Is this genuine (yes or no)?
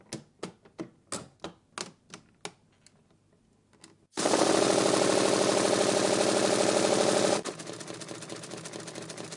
yes